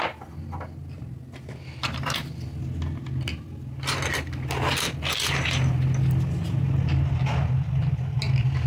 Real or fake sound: real